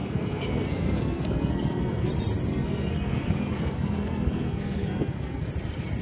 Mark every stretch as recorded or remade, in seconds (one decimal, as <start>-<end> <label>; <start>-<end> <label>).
0.0-2.1 remade; 2.1-2.5 recorded; 2.5-5.5 remade; 5.5-6.0 recorded